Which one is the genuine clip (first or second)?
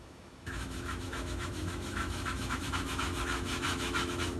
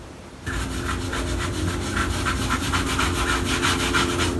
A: second